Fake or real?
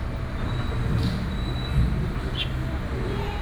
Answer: real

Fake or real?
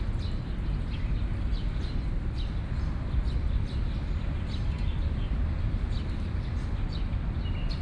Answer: real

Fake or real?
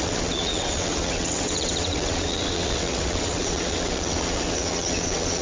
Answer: fake